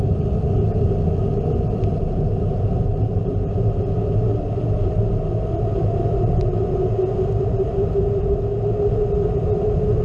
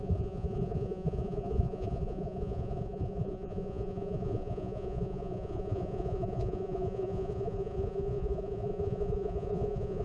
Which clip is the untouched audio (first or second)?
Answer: first